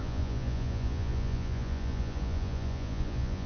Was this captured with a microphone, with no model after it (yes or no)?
no